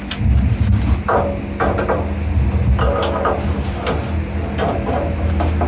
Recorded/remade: recorded